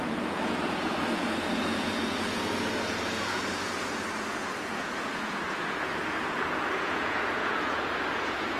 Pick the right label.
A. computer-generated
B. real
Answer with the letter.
A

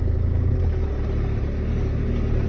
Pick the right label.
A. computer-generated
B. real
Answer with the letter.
B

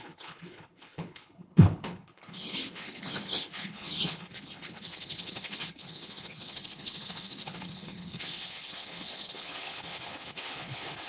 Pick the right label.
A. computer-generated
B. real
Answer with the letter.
A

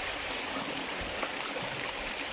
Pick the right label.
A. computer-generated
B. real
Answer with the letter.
B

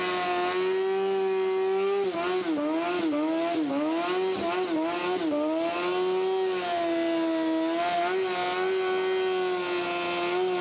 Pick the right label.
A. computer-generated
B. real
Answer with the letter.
B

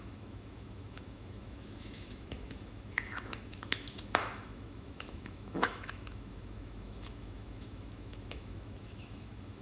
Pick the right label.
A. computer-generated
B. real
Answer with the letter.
A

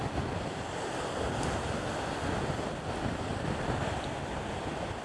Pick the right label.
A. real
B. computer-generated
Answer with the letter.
A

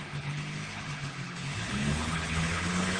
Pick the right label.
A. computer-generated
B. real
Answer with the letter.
A